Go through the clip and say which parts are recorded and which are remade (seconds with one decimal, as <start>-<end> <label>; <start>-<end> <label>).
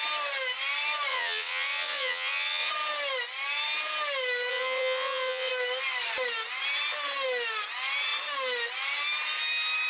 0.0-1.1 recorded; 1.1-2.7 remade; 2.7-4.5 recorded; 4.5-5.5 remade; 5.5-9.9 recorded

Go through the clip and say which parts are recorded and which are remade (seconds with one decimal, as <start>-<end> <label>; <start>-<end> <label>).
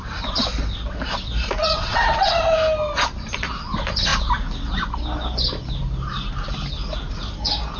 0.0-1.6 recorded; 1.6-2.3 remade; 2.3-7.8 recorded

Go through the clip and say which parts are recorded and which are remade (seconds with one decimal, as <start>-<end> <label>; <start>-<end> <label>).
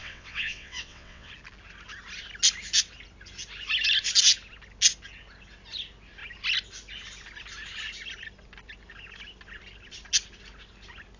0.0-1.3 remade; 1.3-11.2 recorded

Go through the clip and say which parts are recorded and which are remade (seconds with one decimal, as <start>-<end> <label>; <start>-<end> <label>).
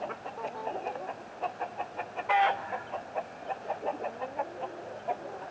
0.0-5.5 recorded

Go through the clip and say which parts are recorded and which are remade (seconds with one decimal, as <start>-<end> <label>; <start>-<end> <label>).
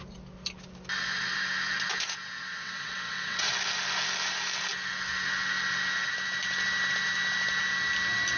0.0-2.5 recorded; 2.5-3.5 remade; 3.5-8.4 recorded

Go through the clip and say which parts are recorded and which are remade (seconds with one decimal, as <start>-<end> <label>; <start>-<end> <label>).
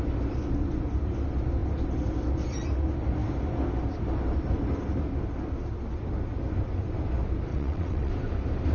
0.0-7.5 recorded; 7.5-8.1 remade; 8.1-8.7 recorded